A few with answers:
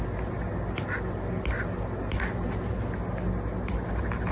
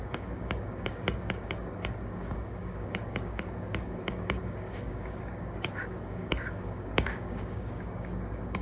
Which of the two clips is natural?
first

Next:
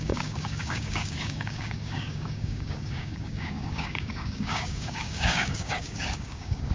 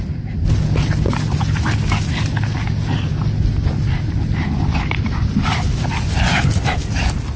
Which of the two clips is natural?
second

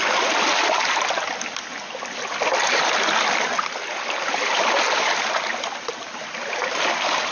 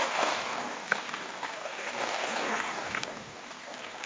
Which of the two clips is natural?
first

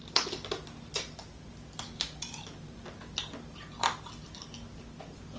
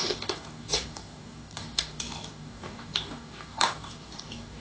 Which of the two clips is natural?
first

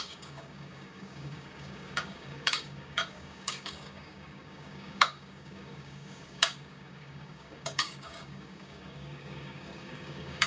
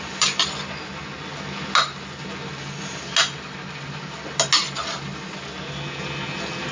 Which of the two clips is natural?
second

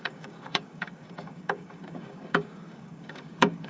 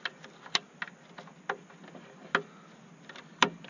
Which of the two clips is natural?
second